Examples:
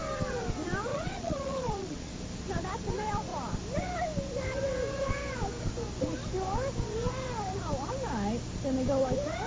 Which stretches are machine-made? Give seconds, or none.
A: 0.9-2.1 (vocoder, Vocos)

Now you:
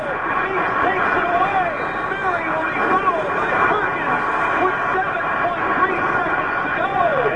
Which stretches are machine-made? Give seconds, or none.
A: 0.0-1.5 (vocoder, Vocos); 5.9-7.4

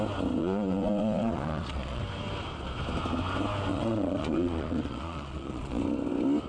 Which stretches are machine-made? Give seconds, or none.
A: 0.4-2.0 (vocoder, Vocos); 3.7-5.8

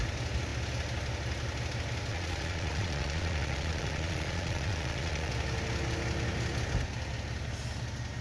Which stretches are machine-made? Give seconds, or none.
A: 2.1-5.3 (vocoder, Vocos)

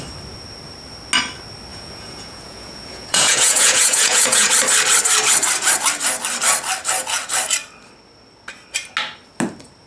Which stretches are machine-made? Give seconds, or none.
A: 1.7-4.5 (vocoder, Vocos)